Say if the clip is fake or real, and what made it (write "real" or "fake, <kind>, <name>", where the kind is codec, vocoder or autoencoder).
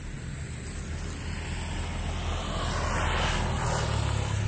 real